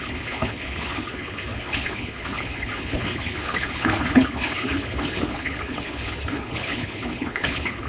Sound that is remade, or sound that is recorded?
remade